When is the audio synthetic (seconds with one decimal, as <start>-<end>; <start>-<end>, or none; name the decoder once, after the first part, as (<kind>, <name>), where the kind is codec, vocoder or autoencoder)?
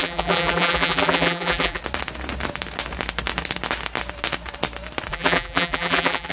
0.0-1.8 (vocoder, BigVGAN v2); 5.1-6.3